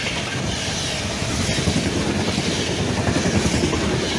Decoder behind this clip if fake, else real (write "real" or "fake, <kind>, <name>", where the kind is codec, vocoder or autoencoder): real